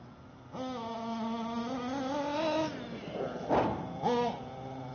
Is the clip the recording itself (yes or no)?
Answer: yes